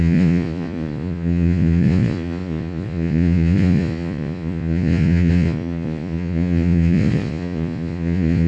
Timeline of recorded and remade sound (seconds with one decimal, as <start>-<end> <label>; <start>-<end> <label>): 0.0-8.5 remade